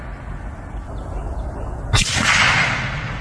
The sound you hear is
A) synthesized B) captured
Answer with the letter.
B